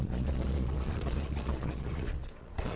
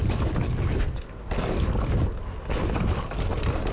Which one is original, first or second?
second